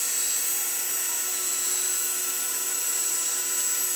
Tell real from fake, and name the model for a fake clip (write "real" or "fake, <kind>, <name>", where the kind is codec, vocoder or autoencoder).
real